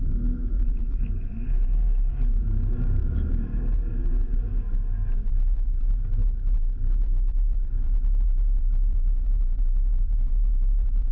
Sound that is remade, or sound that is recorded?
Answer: remade